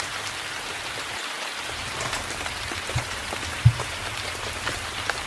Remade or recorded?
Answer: recorded